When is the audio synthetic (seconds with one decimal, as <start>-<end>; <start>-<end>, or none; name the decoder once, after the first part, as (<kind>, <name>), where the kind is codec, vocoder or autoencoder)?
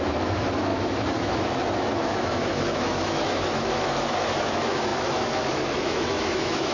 0.0-6.7 (autoencoder, DAC-VAE)